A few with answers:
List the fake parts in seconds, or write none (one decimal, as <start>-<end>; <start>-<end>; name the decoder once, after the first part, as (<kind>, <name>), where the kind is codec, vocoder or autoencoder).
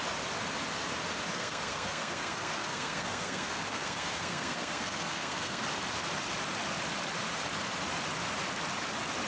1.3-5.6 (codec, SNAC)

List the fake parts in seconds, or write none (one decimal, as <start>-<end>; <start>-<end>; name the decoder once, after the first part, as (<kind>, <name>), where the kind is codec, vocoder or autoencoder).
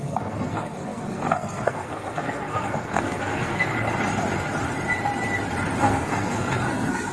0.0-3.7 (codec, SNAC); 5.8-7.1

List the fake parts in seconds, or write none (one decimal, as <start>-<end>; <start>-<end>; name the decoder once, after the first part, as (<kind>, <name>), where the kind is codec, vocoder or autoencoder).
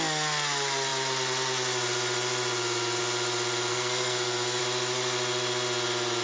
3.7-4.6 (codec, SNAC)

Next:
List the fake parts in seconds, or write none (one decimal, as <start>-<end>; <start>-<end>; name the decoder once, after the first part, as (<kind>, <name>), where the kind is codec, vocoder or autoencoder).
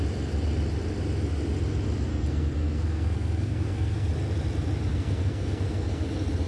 2.1-4.1 (codec, SNAC); 4.9-6.1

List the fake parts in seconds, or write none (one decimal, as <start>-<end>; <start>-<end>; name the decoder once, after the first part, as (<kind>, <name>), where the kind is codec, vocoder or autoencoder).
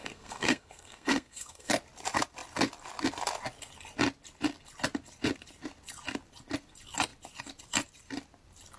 0.0-1.7 (codec, SNAC)